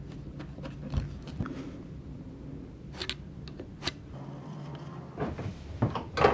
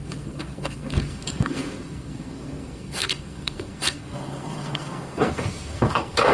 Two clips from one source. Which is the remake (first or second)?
second